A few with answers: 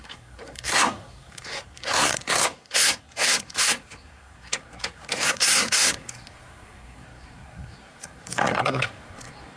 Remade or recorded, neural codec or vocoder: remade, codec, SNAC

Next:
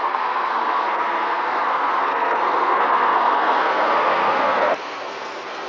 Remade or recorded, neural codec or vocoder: remade, codec, SNAC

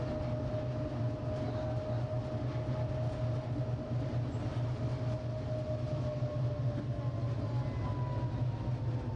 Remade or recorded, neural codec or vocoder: recorded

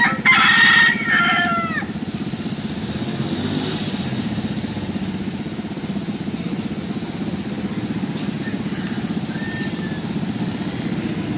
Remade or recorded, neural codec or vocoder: recorded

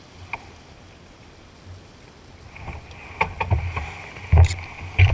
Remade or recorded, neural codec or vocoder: recorded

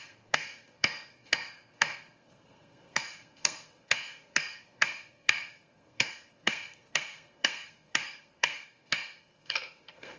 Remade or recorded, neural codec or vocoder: remade, codec, SNAC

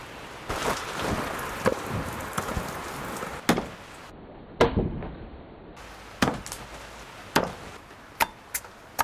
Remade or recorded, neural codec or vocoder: recorded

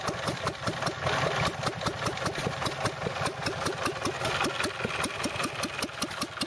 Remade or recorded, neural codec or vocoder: recorded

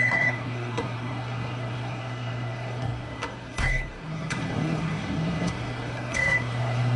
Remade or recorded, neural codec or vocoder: remade, codec, SNAC